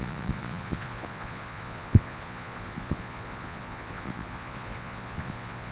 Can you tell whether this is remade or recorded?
remade